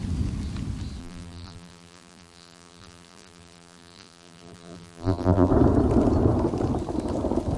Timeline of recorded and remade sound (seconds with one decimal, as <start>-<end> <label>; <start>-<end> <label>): 0.0-1.0 recorded; 1.0-5.5 remade; 5.5-7.6 recorded